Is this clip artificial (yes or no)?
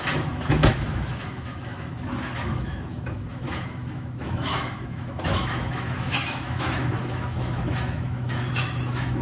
yes